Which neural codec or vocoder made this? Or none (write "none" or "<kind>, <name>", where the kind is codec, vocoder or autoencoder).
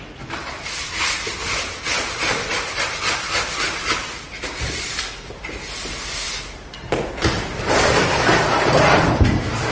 none